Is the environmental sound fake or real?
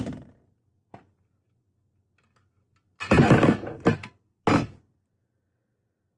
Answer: real